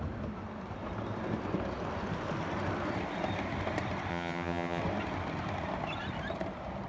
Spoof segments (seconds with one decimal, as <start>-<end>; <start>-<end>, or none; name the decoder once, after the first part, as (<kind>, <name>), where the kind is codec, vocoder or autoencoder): 4.1-4.8 (vocoder, HiFi-GAN)